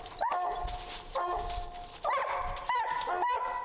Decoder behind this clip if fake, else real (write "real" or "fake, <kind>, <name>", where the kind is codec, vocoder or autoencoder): real